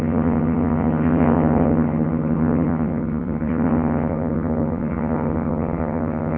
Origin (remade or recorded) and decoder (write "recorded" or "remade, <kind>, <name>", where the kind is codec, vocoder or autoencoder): remade, vocoder, HiFi-GAN